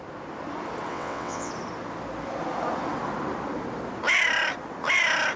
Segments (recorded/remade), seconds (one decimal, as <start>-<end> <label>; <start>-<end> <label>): 0.0-0.9 recorded; 0.9-1.5 remade; 1.5-5.4 recorded